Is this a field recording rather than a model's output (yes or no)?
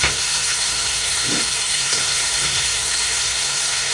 no